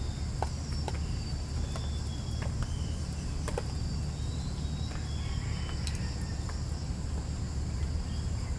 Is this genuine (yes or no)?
yes